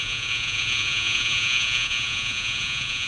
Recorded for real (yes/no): no